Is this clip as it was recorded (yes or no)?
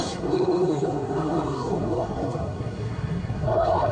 no